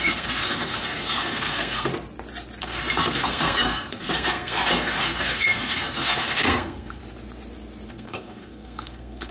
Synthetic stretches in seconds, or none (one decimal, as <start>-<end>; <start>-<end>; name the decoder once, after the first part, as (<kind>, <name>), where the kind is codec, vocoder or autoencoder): 0.0-1.9 (codec, SNAC); 2.6-7.0; 7.9-9.3